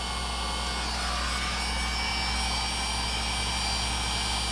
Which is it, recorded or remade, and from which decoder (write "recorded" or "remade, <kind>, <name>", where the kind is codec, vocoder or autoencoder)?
recorded